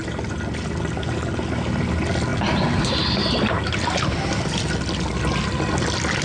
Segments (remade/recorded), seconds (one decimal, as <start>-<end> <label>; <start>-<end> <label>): 0.0-6.2 recorded